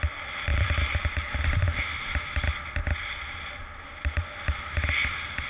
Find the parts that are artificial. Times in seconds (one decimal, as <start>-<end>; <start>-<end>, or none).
0.5-1.4